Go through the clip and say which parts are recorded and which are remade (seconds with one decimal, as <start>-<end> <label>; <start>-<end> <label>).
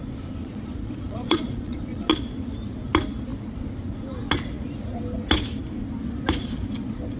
0.0-0.4 recorded; 0.4-2.1 remade; 2.1-7.2 recorded